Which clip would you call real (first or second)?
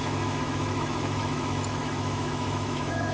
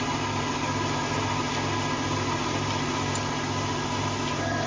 second